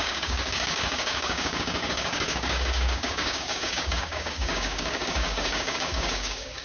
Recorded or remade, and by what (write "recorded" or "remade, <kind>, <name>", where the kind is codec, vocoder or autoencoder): remade, codec, DAC